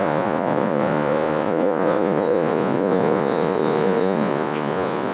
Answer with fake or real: fake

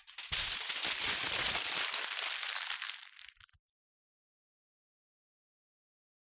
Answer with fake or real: real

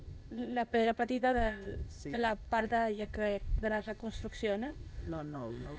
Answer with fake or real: fake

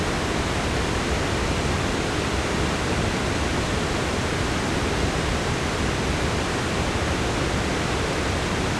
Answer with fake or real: real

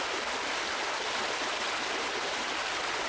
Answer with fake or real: real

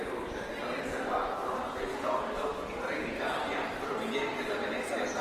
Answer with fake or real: real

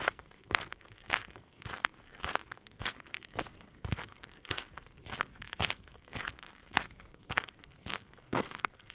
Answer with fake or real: fake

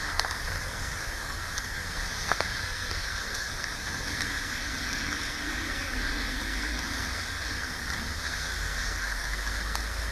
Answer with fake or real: fake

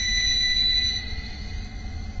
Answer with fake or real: real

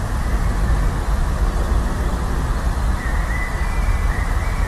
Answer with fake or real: real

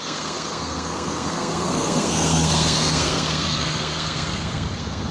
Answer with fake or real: fake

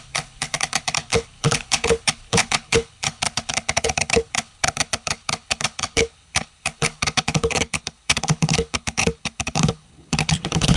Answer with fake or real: fake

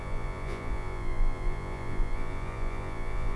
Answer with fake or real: fake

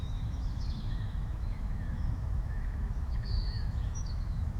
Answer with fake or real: fake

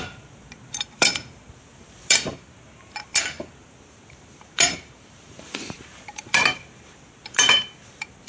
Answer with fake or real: fake